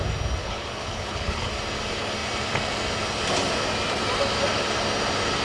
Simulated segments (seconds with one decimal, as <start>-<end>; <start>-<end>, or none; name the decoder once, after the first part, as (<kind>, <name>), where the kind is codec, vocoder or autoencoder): 0.4-1.5 (codec, HILCodec)